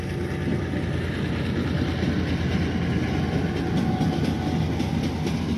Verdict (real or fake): real